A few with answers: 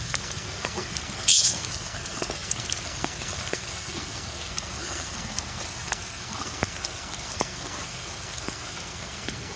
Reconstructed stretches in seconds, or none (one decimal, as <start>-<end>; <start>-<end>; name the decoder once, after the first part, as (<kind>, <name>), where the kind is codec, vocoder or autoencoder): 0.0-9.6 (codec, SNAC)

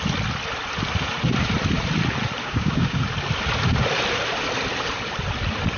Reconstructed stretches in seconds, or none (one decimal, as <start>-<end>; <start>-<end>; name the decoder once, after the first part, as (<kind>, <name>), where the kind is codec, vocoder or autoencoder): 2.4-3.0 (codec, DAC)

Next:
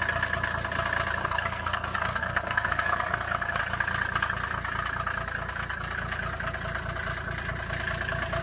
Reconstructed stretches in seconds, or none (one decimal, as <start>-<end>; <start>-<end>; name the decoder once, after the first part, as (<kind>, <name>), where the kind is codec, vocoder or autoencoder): 1.2-3.6 (codec, SNAC)

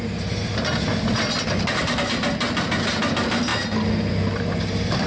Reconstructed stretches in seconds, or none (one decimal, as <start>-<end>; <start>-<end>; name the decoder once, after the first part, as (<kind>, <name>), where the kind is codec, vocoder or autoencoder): none

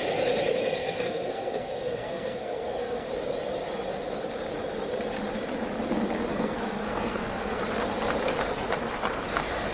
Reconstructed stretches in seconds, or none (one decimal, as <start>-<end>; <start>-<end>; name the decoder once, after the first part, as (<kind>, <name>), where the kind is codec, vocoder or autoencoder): 0.8-3.1 (codec, SNAC); 6.3-7.6

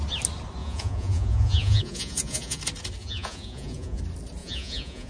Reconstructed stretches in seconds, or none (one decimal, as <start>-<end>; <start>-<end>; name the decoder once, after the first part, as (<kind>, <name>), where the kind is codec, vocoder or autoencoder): 0.6-2.6 (vocoder, Vocos); 3.0-4.0; 4.4-5.1

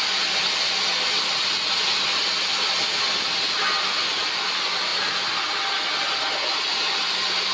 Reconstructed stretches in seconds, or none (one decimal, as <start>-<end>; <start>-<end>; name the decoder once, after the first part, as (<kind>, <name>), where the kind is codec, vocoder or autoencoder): none

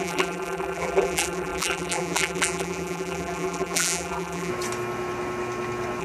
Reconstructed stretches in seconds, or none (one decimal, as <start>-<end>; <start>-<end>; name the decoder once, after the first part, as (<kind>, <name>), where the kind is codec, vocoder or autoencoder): 0.0-4.5 (vocoder, BigVGAN v2)